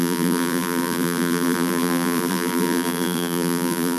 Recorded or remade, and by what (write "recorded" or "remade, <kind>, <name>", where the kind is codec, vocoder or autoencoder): remade, vocoder, BigVGAN v2